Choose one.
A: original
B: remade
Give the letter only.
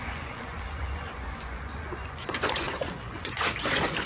B